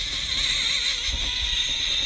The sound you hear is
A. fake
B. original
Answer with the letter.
B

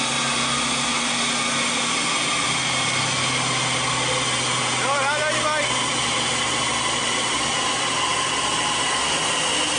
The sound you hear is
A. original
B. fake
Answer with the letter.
A